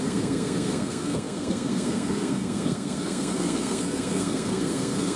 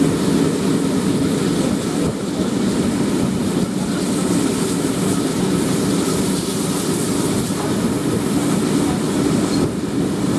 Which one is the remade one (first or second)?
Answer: first